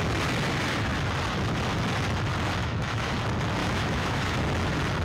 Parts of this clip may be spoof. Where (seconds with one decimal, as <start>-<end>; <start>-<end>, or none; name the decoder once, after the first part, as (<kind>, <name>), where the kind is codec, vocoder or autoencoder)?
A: 2.6-3.1 (autoencoder, DAC-VAE); 3.6-4.4